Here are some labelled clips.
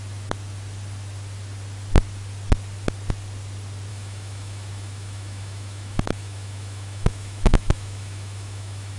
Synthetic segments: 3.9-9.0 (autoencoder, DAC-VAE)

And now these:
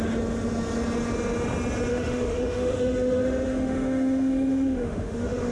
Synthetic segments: 1.9-5.5 (autoencoder, DAC-VAE)

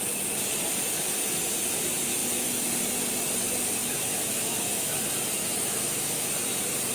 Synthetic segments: 3.8-5.0 (autoencoder, DAC-VAE); 5.4-6.3